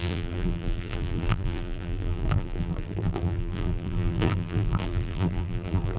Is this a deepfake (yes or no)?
yes